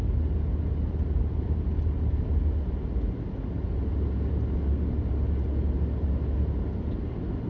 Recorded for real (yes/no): yes